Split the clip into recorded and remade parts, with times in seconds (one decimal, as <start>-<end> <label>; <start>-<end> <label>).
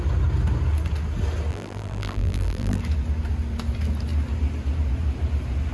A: 0.0-1.5 recorded; 1.5-2.8 remade; 2.8-5.7 recorded